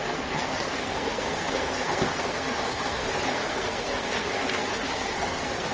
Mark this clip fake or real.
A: fake